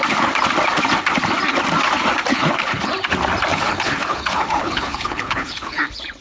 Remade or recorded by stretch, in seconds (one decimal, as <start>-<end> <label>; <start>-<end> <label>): 0.0-2.3 recorded; 2.3-2.9 remade; 2.9-3.5 recorded; 3.5-6.2 remade